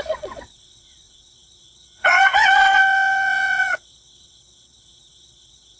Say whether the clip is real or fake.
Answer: fake